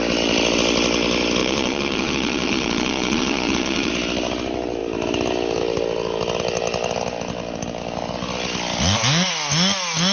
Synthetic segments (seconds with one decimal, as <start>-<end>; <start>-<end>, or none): 1.4-3.9